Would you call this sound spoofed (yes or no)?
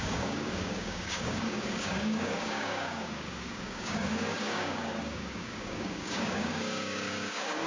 yes